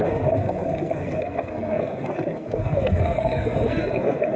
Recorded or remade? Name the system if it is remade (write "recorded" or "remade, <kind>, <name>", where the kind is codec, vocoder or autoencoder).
remade, codec, SNAC